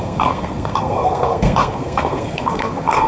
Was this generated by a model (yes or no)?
yes